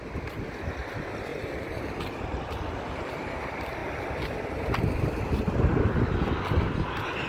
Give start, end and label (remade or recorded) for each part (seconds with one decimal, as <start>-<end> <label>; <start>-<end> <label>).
0.0-1.3 recorded; 1.3-2.4 remade; 2.4-7.3 recorded